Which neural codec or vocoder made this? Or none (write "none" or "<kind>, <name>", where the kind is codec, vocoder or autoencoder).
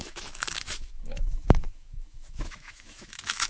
autoencoder, DAC-VAE